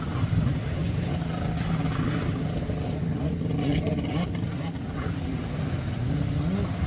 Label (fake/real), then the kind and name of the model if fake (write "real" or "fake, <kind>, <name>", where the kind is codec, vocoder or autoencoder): real